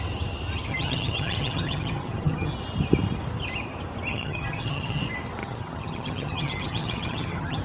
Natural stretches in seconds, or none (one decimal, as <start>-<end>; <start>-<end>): 0.0-0.7; 2.5-4.1; 5.0-5.4